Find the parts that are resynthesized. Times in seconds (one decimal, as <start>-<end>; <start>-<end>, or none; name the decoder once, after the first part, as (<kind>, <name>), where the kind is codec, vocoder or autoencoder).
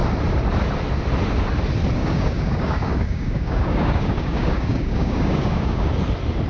2.0-5.9 (codec, DAC)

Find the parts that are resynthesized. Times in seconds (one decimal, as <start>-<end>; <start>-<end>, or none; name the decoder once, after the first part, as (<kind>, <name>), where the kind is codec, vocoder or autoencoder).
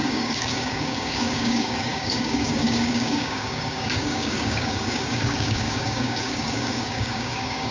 0.0-7.7 (codec, DAC)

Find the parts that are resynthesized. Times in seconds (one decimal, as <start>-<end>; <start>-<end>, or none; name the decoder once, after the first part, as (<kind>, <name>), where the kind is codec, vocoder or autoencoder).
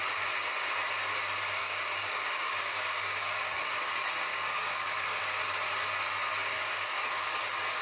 1.6-3.7 (codec, DAC); 4.3-5.2; 6.4-7.8